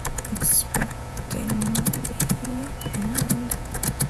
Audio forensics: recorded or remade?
remade